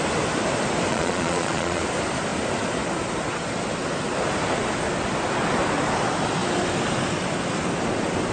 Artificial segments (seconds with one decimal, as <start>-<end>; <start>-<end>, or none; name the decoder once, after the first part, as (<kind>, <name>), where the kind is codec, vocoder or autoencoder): 0.9-1.8 (vocoder, Vocos)